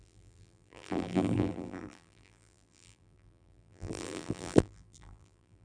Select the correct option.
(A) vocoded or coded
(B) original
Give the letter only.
A